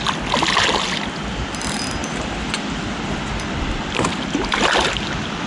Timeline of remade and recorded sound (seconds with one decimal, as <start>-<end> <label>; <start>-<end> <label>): 0.0-5.5 recorded